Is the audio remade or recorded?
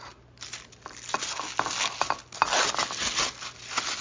recorded